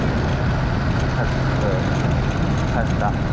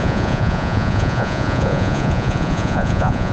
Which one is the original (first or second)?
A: first